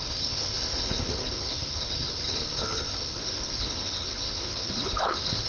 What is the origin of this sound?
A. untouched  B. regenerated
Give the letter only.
B